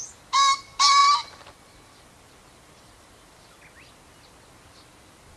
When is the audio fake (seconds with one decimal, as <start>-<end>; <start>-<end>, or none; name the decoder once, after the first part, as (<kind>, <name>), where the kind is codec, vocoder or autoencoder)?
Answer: none